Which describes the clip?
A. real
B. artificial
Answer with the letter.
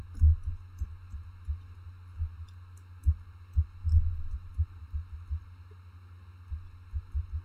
A